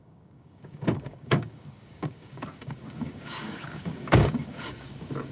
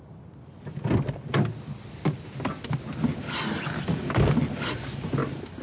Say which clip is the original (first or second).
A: second